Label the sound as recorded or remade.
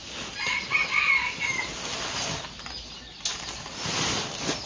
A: recorded